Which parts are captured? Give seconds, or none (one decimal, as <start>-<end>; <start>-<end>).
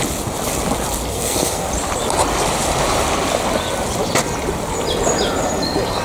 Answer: 0.0-1.1; 1.7-6.0